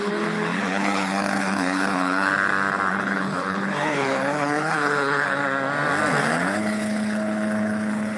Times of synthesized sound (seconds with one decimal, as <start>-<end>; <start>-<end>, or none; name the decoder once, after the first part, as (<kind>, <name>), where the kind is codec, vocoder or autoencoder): 0.0-2.3 (codec, HILCodec); 2.9-5.4; 6.2-8.2